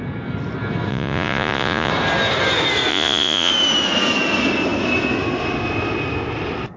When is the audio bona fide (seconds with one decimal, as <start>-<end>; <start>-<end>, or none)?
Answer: 0.0-0.9; 1.9-2.9; 3.5-6.8